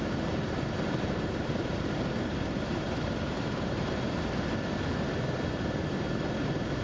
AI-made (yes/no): yes